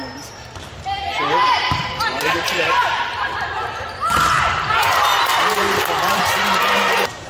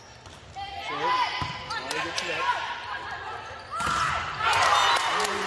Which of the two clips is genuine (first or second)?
second